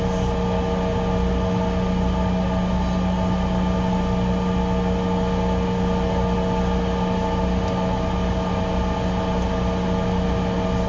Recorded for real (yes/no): yes